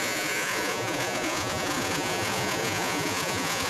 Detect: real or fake fake